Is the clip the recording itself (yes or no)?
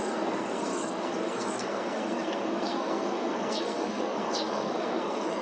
no